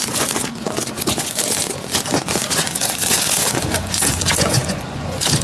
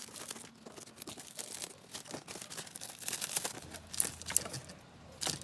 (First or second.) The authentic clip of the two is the second